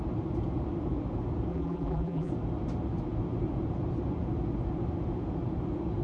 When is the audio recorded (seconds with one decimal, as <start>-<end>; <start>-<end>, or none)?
0.0-1.5; 2.3-6.0